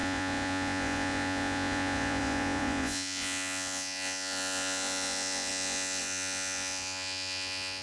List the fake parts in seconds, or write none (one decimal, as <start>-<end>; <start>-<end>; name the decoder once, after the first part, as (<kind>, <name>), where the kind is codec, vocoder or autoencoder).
0.0-7.8 (vocoder, Vocos)